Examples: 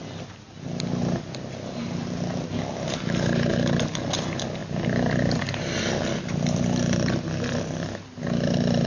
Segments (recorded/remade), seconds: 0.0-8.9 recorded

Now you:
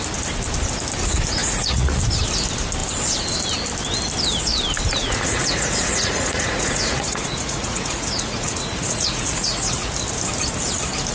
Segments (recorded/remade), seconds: 0.0-1.4 recorded; 1.4-2.0 remade; 2.0-5.0 recorded; 5.0-9.9 remade; 9.9-11.1 recorded

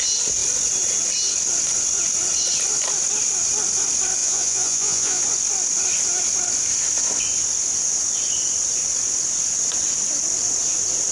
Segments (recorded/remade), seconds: 0.0-4.2 recorded; 4.2-5.2 remade; 5.2-11.1 recorded

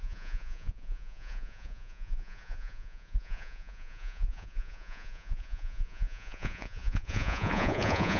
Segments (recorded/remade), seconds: 0.0-8.2 remade

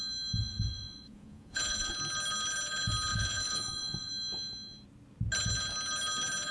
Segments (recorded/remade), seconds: 0.0-0.4 recorded; 0.4-1.9 remade; 1.9-3.1 recorded; 3.1-4.1 remade; 4.1-6.5 recorded

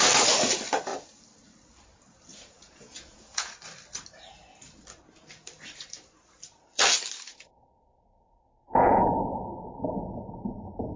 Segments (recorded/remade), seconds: 0.0-2.3 recorded; 2.3-3.5 remade; 3.5-7.3 recorded; 7.3-9.1 remade; 9.1-11.0 recorded

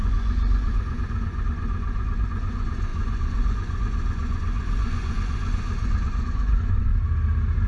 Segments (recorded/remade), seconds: 0.0-6.9 remade; 6.9-7.7 recorded